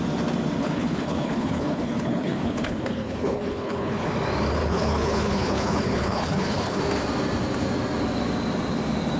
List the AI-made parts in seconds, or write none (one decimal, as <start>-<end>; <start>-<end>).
0.6-4.1; 4.6-6.8